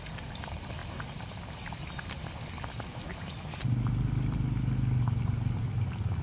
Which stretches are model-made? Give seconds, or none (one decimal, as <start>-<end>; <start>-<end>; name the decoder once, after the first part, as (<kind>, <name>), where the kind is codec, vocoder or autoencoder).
none